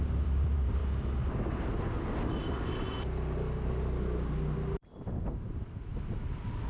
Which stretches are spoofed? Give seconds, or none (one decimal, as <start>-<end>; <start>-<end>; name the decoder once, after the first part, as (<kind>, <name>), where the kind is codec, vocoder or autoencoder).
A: 0.0-0.8 (vocoder, BigVGAN v2); 4.8-5.9